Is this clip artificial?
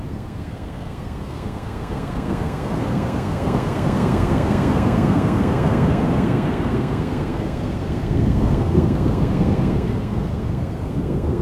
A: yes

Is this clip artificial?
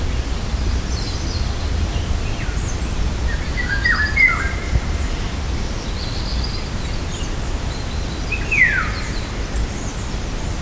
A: no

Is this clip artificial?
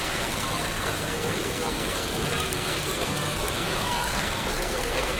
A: yes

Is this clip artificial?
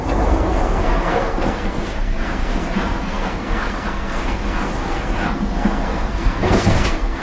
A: yes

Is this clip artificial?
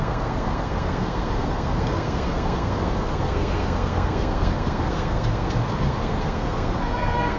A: yes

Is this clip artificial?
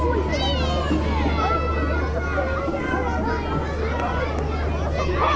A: no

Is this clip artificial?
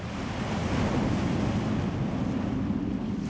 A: no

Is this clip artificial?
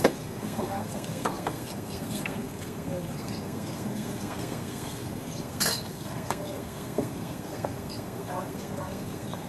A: yes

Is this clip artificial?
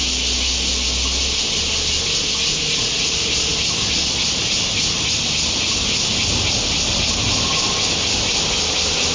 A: no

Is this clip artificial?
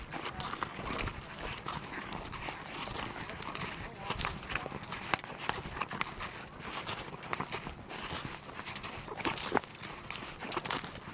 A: no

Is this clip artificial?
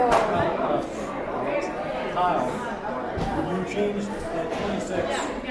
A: no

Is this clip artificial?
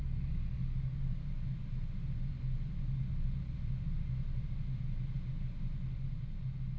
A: no